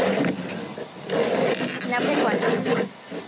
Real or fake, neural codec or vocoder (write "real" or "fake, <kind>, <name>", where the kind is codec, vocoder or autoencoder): real